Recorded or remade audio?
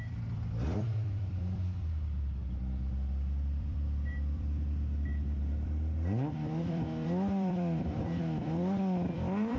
remade